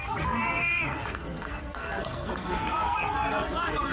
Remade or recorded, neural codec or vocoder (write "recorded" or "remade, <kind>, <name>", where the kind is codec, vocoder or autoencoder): remade, codec, SNAC